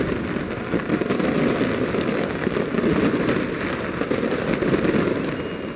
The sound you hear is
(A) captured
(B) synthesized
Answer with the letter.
A